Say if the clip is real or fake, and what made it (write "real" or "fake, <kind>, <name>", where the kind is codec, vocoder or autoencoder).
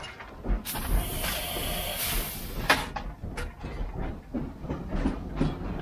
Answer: real